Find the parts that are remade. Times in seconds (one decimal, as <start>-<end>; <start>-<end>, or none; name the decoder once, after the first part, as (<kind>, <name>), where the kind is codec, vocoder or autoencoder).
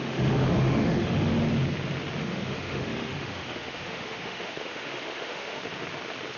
0.0-1.3 (autoencoder, DAC-VAE); 2.2-5.6